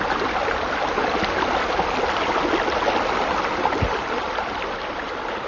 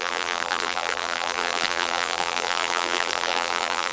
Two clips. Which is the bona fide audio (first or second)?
first